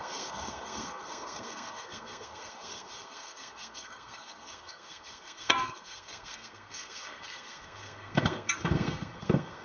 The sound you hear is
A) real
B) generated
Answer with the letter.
B